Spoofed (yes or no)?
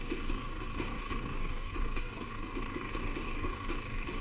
yes